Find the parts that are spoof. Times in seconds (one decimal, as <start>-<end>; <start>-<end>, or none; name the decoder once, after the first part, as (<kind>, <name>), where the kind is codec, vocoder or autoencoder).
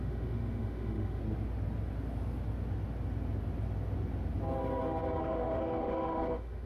0.0-1.2 (autoencoder, DAC-VAE); 5.2-6.7